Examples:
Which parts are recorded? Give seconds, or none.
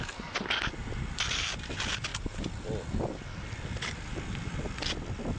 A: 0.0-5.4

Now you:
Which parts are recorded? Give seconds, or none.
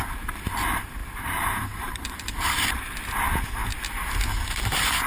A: 0.0-1.0; 2.7-5.1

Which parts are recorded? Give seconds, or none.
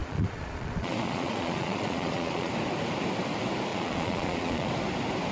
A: 2.5-3.7; 4.7-5.3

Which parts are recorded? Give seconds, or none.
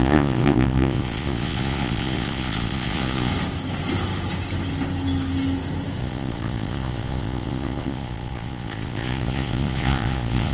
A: 3.3-6.0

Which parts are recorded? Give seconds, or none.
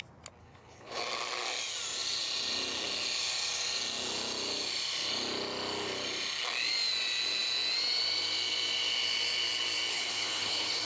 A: 0.0-0.4; 1.0-9.9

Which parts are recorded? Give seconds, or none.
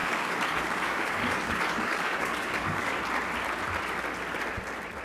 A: 3.0-5.0